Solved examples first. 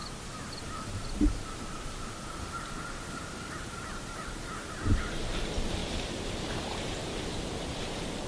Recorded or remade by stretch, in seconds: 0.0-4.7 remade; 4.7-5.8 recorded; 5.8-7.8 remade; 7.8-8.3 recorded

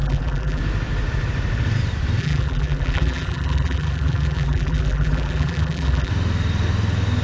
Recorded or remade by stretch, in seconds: 0.0-0.6 remade; 0.6-2.2 recorded; 2.2-6.1 remade; 6.1-7.2 recorded